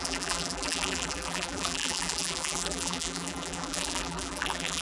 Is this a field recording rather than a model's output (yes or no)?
no